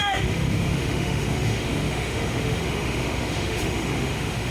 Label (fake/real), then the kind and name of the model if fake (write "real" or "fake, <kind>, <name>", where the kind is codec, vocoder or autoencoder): fake, autoencoder, DAC-VAE